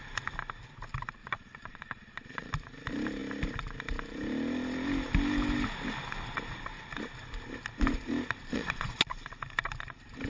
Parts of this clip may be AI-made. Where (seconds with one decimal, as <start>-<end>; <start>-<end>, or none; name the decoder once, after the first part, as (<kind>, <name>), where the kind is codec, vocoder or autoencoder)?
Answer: 1.2-2.5 (vocoder, Vocos); 8.5-9.0

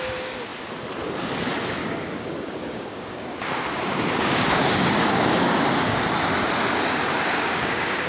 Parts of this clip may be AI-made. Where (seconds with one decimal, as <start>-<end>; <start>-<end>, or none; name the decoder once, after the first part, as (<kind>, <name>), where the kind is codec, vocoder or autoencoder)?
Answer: 1.8-6.0 (codec, DAC); 7.1-8.1

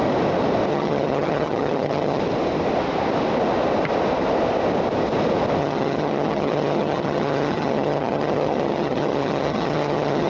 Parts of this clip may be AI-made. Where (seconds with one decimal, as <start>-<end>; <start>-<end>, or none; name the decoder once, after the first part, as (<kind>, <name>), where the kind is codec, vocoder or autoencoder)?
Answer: 0.7-2.2 (vocoder, HiFi-GAN); 5.6-10.3

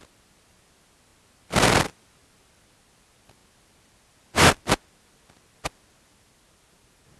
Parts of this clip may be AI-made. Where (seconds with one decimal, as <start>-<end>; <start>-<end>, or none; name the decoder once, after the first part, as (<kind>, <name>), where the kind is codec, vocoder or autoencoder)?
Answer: none

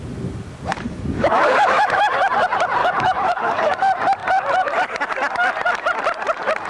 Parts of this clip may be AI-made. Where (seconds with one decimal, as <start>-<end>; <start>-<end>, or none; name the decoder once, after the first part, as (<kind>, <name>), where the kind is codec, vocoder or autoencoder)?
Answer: 0.7-2.0 (codec, DAC); 2.8-3.8